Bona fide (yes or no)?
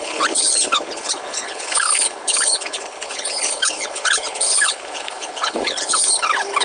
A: no